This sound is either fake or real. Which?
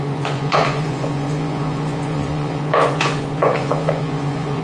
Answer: fake